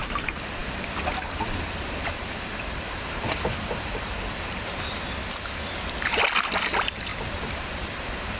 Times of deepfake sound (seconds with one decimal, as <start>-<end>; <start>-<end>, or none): none